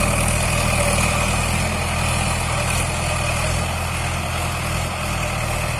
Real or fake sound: real